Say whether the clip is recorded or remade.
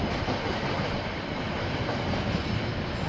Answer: recorded